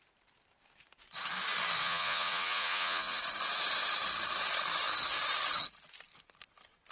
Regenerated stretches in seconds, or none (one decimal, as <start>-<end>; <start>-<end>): 1.8-3.2